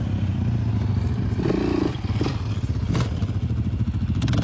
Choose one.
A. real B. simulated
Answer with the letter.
A